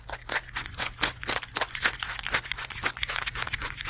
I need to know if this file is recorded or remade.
remade